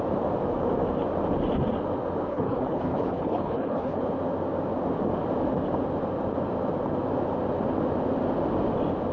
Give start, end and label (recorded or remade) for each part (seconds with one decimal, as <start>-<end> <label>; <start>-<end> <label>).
0.0-2.3 recorded; 2.3-4.0 remade; 4.0-9.1 recorded